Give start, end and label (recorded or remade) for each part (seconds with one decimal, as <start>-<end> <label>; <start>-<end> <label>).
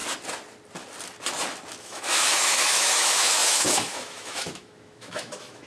0.0-1.8 recorded; 1.8-5.7 remade